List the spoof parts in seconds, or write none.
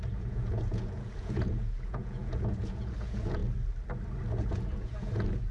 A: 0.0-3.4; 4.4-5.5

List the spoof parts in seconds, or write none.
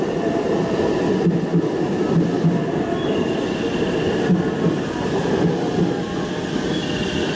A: none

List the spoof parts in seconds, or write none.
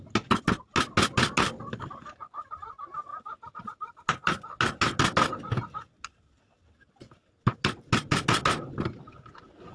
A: 3.1-4.0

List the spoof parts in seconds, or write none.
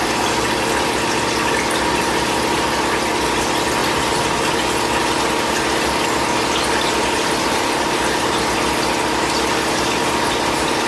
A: none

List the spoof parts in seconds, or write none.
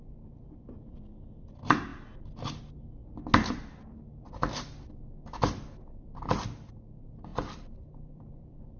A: 7.3-8.3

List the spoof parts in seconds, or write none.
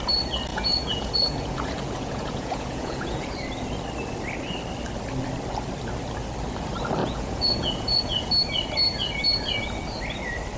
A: 0.5-3.3; 7.0-8.3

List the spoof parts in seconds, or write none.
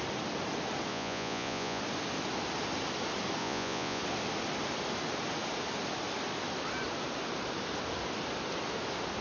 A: 0.9-1.8; 3.4-4.0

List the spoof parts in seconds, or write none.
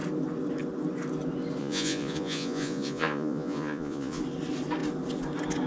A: 1.6-4.2